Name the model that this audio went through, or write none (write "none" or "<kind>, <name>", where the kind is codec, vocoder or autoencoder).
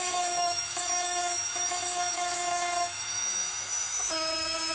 autoencoder, DAC-VAE